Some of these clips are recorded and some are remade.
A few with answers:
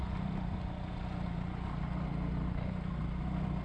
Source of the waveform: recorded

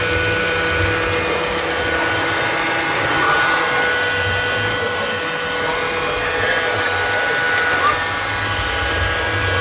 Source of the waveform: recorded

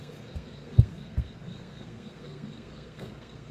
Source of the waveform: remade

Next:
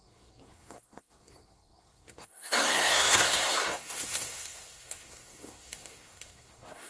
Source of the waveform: remade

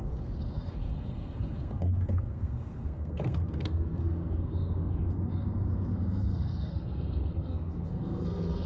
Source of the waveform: remade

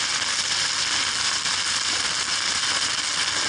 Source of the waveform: recorded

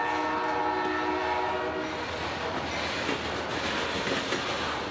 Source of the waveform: recorded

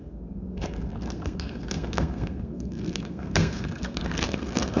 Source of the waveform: remade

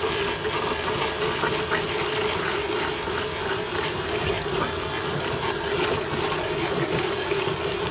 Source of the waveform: recorded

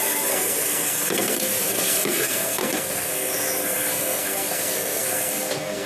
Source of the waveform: remade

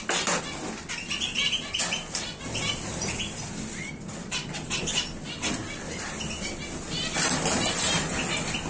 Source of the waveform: recorded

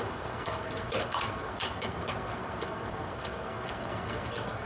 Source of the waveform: remade